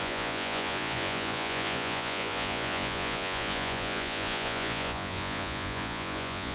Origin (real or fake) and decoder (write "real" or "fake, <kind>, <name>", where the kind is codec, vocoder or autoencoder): fake, vocoder, Vocos